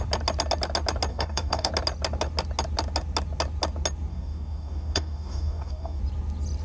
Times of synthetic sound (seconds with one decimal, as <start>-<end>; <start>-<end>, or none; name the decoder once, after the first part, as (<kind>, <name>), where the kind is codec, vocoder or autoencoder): 1.1-1.7 (codec, DAC); 4.1-6.0